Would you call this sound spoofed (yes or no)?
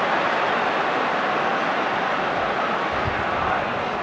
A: no